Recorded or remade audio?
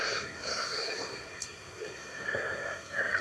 remade